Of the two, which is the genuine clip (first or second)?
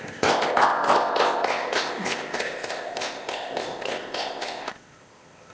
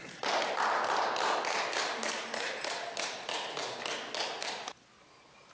second